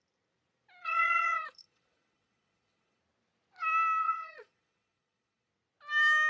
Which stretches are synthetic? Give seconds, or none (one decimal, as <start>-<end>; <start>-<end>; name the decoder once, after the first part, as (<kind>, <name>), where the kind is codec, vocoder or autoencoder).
0.8-3.0 (vocoder, Vocos); 4.0-5.5